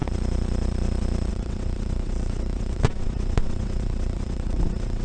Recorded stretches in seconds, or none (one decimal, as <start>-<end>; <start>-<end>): 0.0-1.3